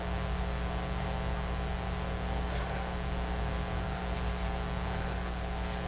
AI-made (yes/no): no